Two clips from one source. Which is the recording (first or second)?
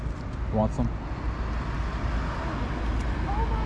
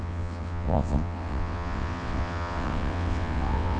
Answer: first